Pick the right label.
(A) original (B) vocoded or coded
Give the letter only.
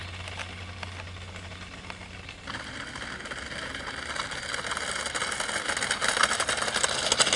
A